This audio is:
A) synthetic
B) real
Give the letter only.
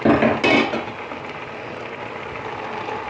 B